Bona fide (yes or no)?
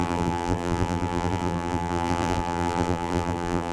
no